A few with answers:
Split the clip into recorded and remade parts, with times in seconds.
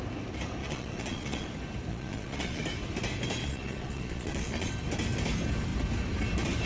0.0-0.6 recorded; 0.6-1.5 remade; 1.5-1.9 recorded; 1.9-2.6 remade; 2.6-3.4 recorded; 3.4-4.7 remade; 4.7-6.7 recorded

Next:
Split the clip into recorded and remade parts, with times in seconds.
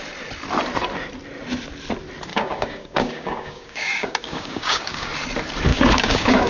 0.0-2.3 recorded; 2.3-5.1 remade; 5.1-5.7 recorded; 5.7-6.5 remade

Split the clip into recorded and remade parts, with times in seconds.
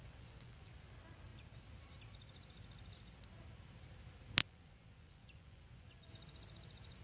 0.0-0.9 remade; 0.9-4.4 recorded; 4.4-6.1 remade; 6.1-7.0 recorded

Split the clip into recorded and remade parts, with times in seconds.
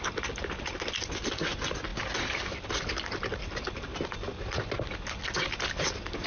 0.0-1.9 recorded; 1.9-2.7 remade; 2.7-6.3 recorded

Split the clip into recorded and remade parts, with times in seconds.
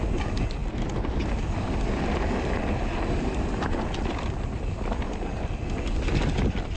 0.0-6.8 recorded